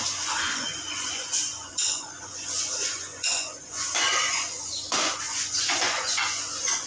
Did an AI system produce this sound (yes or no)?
yes